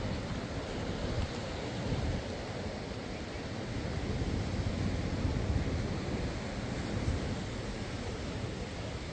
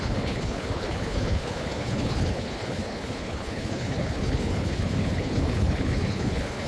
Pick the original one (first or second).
first